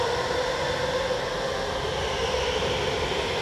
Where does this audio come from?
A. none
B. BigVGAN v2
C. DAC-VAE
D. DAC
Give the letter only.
A